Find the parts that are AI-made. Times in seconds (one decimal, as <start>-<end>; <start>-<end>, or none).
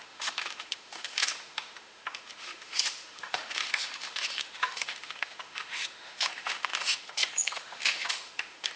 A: 0.0-8.8